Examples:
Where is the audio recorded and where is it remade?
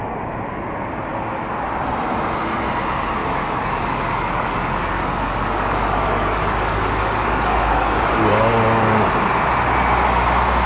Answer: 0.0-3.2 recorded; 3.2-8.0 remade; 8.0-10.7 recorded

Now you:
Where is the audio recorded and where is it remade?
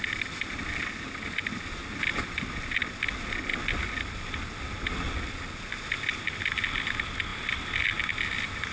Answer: 0.0-8.7 recorded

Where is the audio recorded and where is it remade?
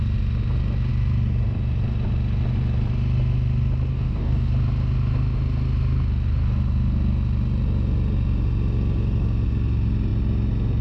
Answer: 0.0-3.9 recorded; 3.9-4.5 remade; 4.5-10.8 recorded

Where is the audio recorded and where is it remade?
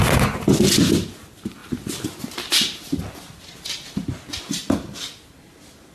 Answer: 0.0-5.9 recorded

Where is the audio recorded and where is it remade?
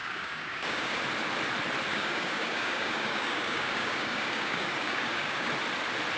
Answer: 0.0-1.0 remade; 1.0-1.9 recorded; 1.9-5.5 remade; 5.5-6.2 recorded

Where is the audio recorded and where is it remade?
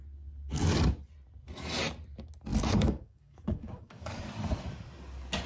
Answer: 0.0-2.5 recorded; 2.5-4.2 remade; 4.2-5.5 recorded